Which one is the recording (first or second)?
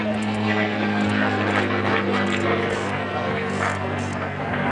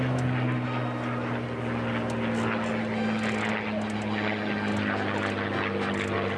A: second